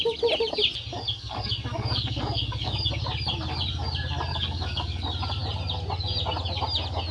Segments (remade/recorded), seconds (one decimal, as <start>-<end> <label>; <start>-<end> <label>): 0.0-0.9 recorded; 0.9-2.9 remade; 2.9-4.3 recorded; 4.3-5.0 remade; 5.0-7.1 recorded